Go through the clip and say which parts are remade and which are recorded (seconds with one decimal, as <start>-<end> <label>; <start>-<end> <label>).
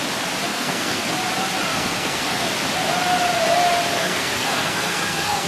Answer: 0.0-0.5 recorded; 0.5-1.1 remade; 1.1-1.7 recorded; 1.7-2.5 remade; 2.5-3.9 recorded; 3.9-5.5 remade